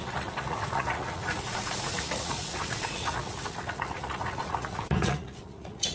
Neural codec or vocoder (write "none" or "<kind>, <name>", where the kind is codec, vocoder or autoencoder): vocoder, Vocos